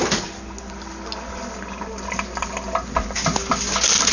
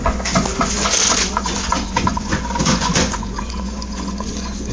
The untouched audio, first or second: first